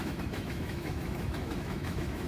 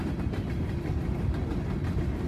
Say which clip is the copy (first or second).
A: first